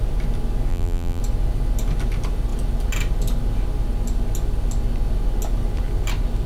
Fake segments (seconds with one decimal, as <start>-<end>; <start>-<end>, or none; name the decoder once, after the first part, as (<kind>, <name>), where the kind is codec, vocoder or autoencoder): 0.7-1.2 (vocoder, BigVGAN v2)